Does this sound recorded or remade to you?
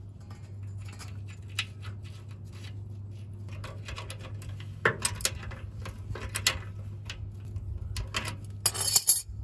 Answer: recorded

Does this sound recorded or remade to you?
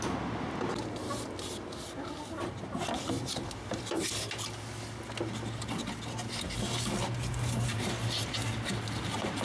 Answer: recorded